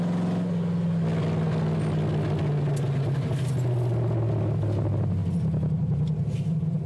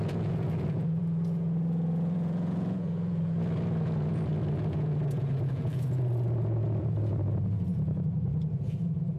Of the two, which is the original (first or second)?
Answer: first